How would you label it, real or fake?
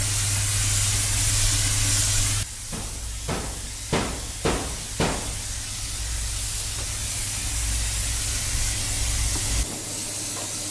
real